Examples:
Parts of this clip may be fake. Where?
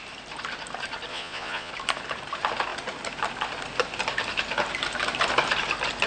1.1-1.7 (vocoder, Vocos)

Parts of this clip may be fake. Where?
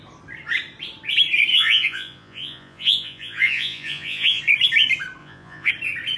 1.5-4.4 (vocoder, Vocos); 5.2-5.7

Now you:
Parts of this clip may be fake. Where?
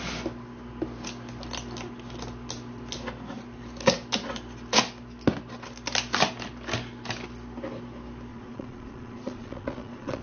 8.3-10.2 (vocoder, Vocos)